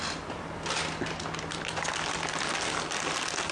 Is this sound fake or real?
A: real